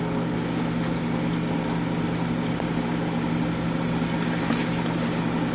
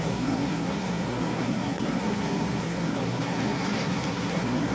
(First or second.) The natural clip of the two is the first